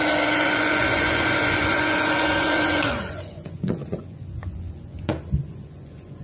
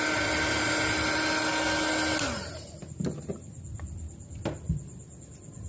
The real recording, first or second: second